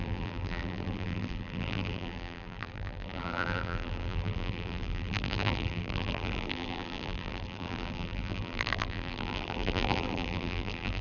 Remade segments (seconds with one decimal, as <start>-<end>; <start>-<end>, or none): 0.0-11.0